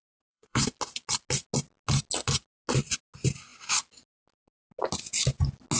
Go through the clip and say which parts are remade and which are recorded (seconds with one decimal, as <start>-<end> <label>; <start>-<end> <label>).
0.0-0.6 remade; 0.6-5.8 recorded